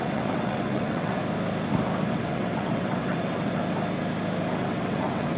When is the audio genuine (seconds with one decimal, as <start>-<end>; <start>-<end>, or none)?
1.2-2.1; 3.6-4.6